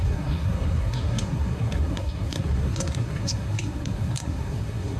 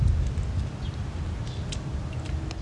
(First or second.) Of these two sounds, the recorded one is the second